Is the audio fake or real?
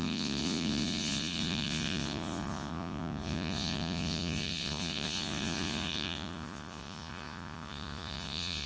fake